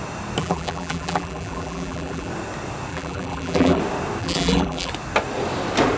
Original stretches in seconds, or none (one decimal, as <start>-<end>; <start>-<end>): 0.0-0.4; 2.3-2.9; 3.8-4.2; 4.9-6.0